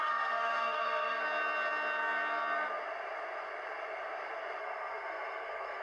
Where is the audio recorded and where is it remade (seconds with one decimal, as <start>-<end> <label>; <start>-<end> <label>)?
0.0-1.2 remade; 1.2-4.6 recorded; 4.6-5.8 remade